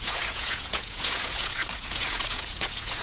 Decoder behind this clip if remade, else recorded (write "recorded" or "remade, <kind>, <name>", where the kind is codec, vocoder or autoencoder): remade, vocoder, Vocos